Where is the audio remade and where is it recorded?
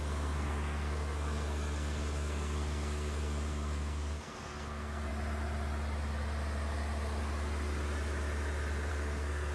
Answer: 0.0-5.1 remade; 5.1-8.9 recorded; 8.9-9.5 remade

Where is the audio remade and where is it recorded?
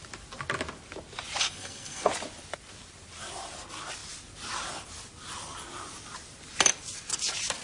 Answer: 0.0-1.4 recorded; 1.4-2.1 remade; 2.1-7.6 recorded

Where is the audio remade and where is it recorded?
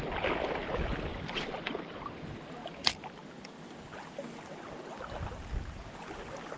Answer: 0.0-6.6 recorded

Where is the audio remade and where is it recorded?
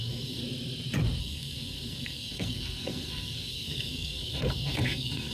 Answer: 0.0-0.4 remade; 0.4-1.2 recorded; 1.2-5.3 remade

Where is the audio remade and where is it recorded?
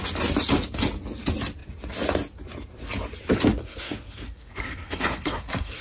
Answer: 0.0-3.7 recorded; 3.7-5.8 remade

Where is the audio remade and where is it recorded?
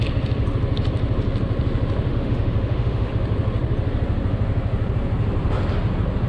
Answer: 0.0-2.1 recorded; 2.1-3.1 remade; 3.1-6.3 recorded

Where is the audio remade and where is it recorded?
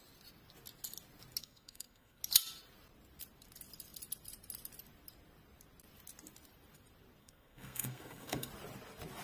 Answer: 0.0-1.4 recorded; 1.4-2.2 remade; 2.2-7.2 recorded; 7.2-8.5 remade; 8.5-9.2 recorded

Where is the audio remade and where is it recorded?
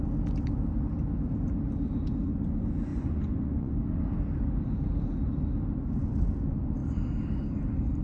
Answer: 0.0-2.9 recorded; 2.9-3.7 remade; 3.7-8.0 recorded